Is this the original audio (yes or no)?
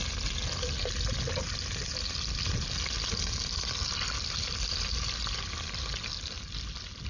yes